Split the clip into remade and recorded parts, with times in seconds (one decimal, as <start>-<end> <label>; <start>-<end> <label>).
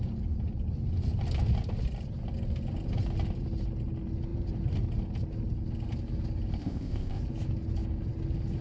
0.0-6.6 recorded; 6.6-7.2 remade; 7.2-8.6 recorded